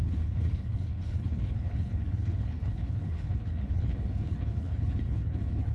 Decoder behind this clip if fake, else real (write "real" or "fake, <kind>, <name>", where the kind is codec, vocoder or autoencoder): fake, codec, HILCodec